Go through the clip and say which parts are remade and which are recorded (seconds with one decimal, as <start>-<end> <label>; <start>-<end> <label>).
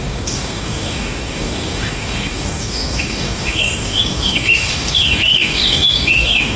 0.0-6.6 remade